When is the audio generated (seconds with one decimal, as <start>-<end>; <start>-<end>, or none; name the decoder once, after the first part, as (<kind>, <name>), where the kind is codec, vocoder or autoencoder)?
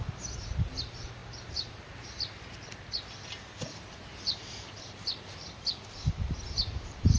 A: 1.2-1.8 (vocoder, BigVGAN v2); 3.7-7.2